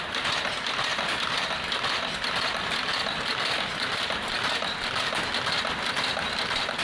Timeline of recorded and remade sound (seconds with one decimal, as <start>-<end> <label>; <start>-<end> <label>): 0.0-0.9 recorded; 0.9-5.0 remade; 5.0-6.8 recorded